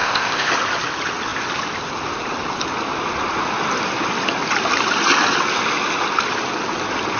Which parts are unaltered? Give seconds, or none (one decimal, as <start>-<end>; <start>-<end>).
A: 0.5-7.2